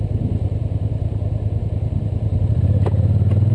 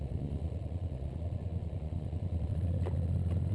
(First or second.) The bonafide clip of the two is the first